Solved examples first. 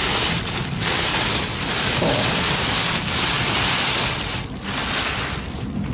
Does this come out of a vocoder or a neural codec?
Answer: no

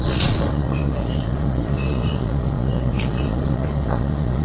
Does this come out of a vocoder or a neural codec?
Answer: yes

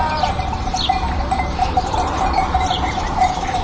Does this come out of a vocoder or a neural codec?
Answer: yes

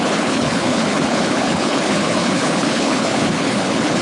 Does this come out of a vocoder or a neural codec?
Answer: yes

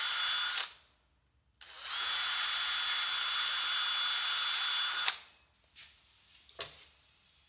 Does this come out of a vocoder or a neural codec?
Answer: no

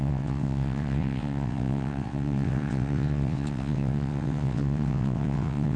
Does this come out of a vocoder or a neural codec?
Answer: yes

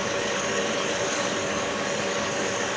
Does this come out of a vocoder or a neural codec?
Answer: yes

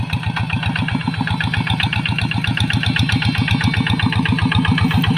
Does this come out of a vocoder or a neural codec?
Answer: no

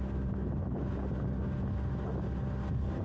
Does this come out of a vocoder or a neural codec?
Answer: no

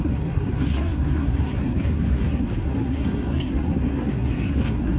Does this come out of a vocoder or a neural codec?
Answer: yes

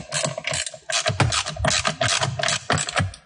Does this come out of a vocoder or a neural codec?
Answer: no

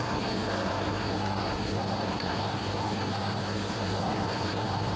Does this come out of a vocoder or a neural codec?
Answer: yes